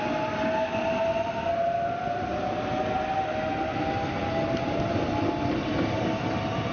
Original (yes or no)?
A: yes